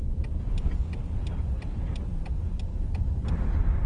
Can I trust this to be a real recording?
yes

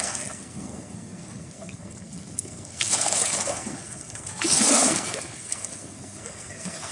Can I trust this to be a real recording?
no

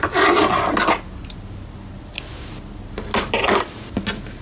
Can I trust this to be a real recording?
yes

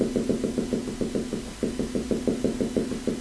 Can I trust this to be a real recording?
yes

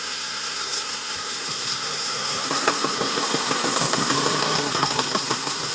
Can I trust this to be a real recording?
no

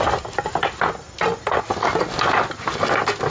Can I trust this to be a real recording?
yes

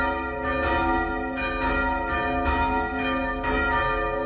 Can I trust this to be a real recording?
yes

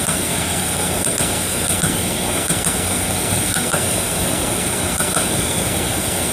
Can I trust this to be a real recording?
no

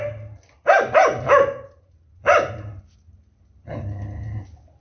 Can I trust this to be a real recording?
yes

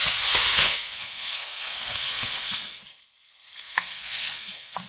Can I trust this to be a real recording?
no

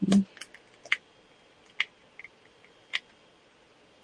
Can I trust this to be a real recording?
yes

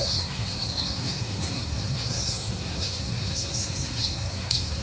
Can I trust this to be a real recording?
no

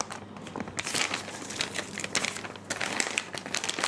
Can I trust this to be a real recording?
yes